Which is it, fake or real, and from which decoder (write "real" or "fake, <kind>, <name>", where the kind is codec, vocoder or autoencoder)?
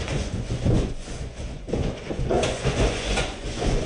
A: fake, vocoder, Vocos